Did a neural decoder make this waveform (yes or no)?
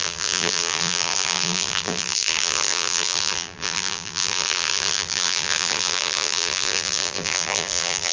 yes